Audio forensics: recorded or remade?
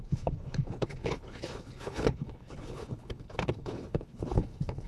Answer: remade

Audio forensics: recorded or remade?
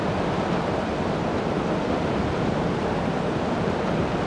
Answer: recorded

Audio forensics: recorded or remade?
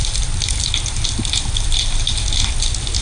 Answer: recorded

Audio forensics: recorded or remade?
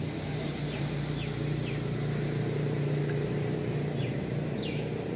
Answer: recorded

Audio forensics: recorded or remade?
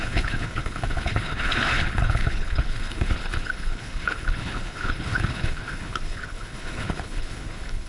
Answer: remade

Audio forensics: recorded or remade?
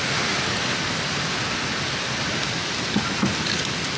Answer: recorded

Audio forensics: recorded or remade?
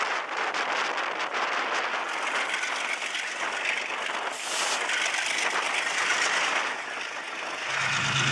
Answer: recorded